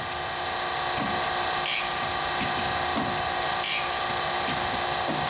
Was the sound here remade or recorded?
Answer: recorded